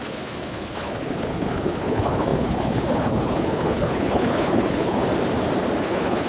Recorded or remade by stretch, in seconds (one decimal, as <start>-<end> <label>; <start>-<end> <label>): 0.0-5.0 remade; 5.0-5.8 recorded; 5.8-6.3 remade